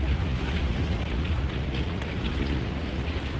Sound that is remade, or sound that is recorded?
remade